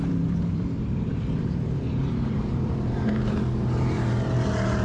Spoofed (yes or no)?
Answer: yes